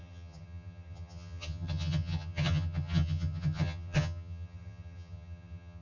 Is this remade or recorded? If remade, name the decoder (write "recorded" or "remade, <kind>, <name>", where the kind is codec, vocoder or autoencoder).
remade, vocoder, HiFi-GAN